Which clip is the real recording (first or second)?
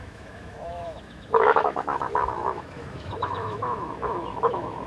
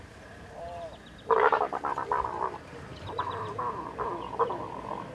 second